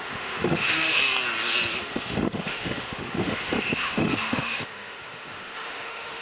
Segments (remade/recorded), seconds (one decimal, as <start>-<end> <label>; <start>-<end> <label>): 0.0-1.0 remade; 1.0-1.8 recorded; 1.8-6.2 remade